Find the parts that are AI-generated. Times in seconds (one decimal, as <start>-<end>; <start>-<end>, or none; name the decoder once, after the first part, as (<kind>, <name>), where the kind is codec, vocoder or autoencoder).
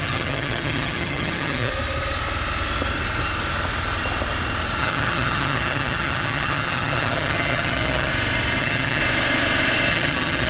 0.0-1.7 (vocoder, HiFi-GAN); 4.8-8.1; 8.6-9.0; 9.9-10.5